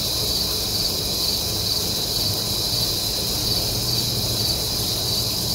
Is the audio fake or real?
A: real